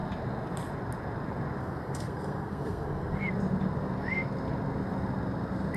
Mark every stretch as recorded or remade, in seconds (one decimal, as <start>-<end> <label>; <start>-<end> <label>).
0.0-1.6 recorded; 1.6-3.2 remade; 3.2-5.8 recorded